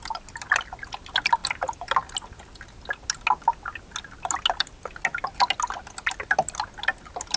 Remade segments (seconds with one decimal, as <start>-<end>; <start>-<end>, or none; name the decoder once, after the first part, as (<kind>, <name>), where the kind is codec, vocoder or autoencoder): none